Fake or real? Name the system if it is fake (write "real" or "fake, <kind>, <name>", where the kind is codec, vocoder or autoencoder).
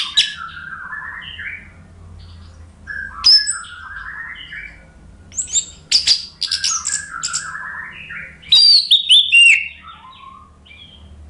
real